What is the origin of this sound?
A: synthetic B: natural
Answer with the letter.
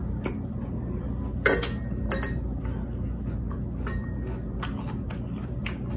B